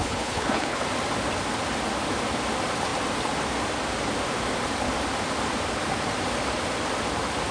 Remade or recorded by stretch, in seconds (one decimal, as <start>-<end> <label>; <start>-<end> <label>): 0.0-0.8 remade; 0.8-7.5 recorded